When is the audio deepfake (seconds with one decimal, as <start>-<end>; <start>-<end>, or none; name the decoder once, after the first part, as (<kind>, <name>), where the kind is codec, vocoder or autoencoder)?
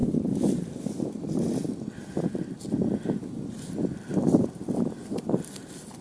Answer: none